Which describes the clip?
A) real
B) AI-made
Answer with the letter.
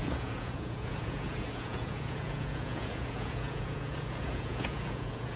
B